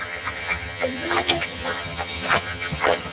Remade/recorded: remade